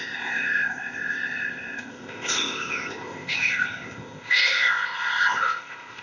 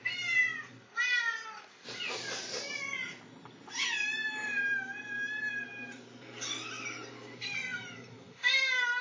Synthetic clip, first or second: first